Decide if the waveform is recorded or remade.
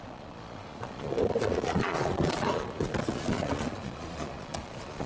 remade